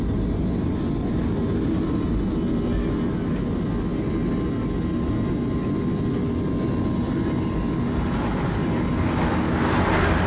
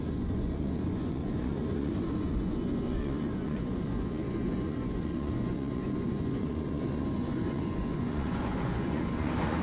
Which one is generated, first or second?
second